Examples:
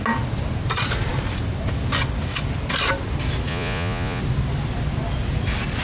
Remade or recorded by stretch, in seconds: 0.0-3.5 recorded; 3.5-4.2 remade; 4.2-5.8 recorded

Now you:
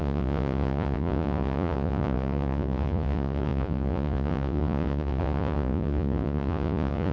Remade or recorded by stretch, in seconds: 0.0-7.1 remade

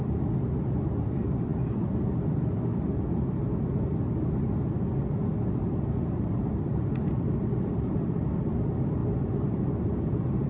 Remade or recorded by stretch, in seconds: 0.0-9.0 remade; 9.0-10.0 recorded; 10.0-10.5 remade

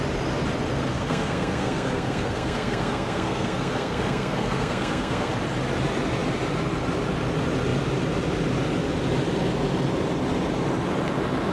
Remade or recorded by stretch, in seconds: 0.0-0.9 recorded; 0.9-5.3 remade; 5.3-11.5 recorded

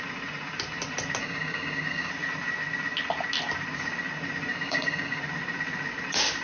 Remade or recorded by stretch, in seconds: 0.0-1.2 recorded; 1.2-2.1 remade; 2.1-4.5 recorded; 4.5-5.2 remade; 5.2-6.4 recorded